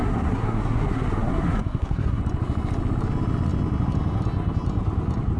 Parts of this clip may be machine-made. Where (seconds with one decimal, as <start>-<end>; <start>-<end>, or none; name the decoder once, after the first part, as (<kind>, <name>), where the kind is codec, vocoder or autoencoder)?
0.0-2.2 (codec, SNAC)